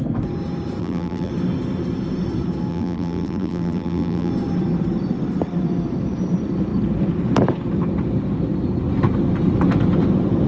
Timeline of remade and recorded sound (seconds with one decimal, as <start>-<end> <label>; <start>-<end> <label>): 0.0-0.8 recorded; 0.8-1.3 remade; 1.3-2.7 recorded; 2.7-4.3 remade; 4.3-10.5 recorded